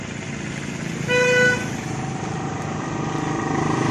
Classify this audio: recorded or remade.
recorded